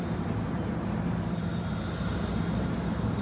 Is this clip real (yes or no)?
yes